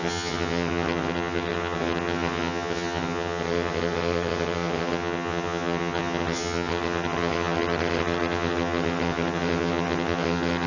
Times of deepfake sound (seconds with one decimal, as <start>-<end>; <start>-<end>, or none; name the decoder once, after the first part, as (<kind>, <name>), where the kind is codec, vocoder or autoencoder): 0.0-10.7 (vocoder, HiFi-GAN)